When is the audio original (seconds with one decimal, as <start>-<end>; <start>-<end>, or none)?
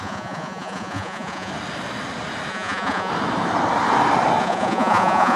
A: 1.5-2.5; 3.1-4.4